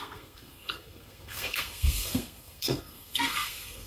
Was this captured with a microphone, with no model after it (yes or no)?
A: no